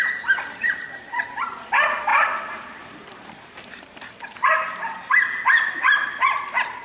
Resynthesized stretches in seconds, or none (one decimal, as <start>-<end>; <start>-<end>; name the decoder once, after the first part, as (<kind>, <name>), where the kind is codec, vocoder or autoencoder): 2.1-4.3 (vocoder, BigVGAN v2)